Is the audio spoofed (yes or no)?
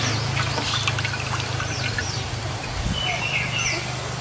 yes